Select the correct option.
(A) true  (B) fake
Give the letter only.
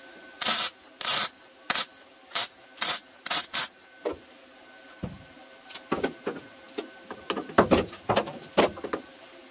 A